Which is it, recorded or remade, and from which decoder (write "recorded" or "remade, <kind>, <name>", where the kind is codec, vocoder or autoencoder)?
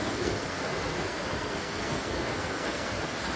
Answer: remade, codec, SNAC